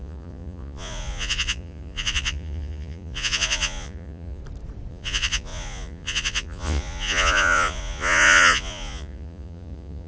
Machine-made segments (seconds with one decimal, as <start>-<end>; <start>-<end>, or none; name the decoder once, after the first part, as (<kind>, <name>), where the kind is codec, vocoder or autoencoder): 0.0-4.4 (vocoder, Vocos); 4.9-10.1